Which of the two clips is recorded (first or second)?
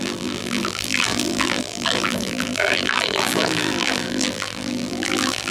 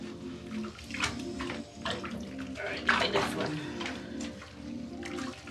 second